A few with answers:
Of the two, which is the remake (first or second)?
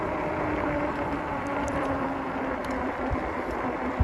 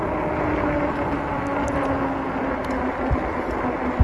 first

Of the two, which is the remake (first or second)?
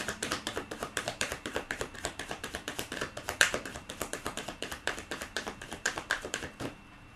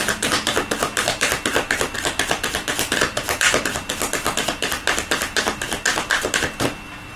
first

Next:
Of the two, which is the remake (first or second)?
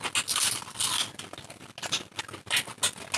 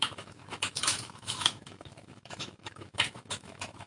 second